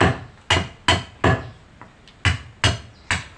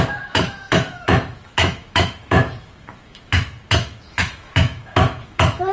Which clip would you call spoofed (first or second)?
second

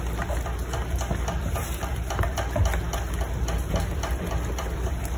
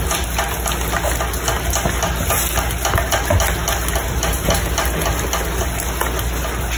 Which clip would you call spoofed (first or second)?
first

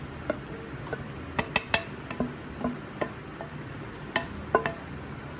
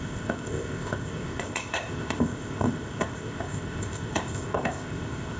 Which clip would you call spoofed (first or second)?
second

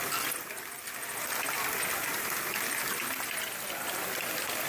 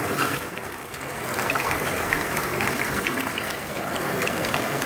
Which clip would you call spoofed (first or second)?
second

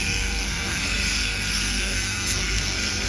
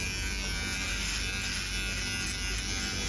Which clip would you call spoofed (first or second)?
first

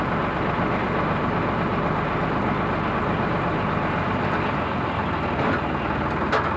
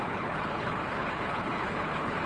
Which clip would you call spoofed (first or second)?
second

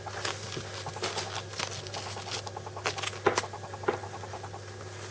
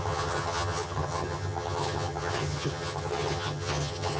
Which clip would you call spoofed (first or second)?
second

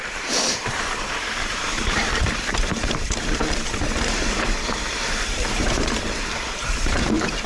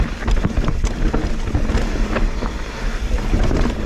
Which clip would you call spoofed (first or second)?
first